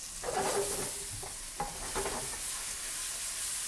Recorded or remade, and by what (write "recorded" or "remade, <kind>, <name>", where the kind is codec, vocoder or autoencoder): recorded